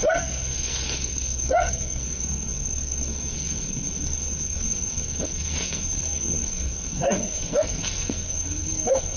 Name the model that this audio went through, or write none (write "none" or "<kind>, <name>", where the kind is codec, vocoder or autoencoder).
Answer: codec, SNAC